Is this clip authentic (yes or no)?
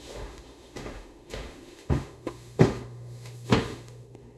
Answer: no